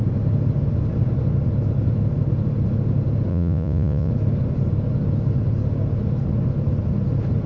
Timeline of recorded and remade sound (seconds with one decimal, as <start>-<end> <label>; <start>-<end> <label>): 0.0-3.3 recorded; 3.3-4.1 remade; 4.1-7.5 recorded